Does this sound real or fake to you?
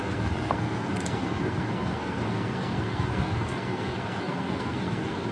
fake